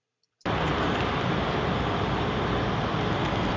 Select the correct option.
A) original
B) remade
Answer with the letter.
A